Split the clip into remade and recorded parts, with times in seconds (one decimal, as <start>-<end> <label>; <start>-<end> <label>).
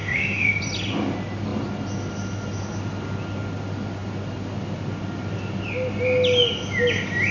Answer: 0.0-0.6 remade; 0.6-7.3 recorded